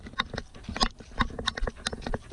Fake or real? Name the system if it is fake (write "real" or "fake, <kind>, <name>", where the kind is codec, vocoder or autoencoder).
real